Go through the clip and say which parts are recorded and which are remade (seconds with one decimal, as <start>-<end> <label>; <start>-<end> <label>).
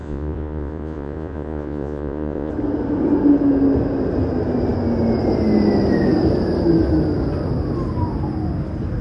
0.0-2.5 remade; 2.5-9.0 recorded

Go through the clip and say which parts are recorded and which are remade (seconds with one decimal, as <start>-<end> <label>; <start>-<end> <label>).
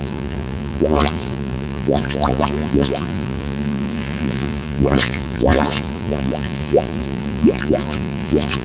0.0-8.6 remade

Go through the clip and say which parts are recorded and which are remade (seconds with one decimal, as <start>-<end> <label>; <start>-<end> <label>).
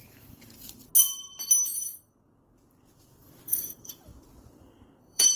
0.0-0.9 remade; 0.9-3.2 recorded; 3.2-4.1 remade; 4.1-5.0 recorded; 5.0-5.4 remade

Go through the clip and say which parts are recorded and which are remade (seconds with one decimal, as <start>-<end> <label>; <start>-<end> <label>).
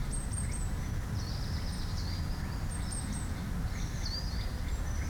0.0-5.1 recorded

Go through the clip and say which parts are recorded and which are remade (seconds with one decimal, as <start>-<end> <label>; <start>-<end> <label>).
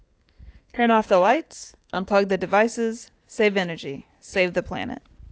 0.0-2.1 remade; 2.1-5.3 recorded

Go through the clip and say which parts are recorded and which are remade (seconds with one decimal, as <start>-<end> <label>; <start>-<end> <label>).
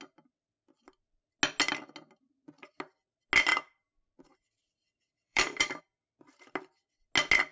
0.0-3.5 recorded; 3.5-5.8 remade; 5.8-7.5 recorded